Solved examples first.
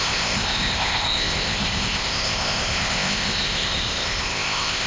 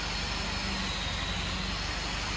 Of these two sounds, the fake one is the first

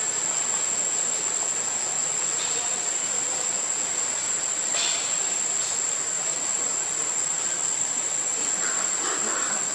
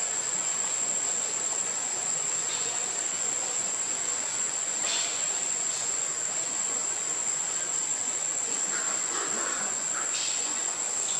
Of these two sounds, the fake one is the second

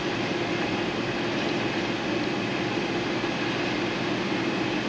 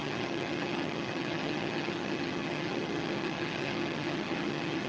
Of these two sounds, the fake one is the second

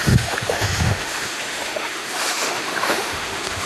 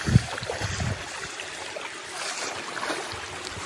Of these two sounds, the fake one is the first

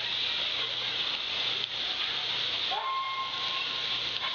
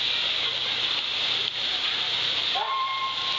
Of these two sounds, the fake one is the second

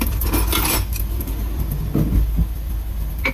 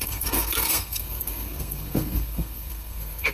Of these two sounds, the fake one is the second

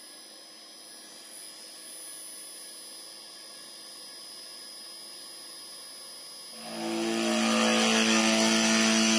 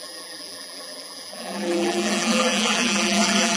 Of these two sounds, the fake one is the second